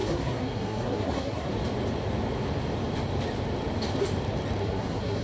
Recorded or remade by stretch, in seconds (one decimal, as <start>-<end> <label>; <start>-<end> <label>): 0.0-1.5 remade; 1.5-4.6 recorded; 4.6-5.2 remade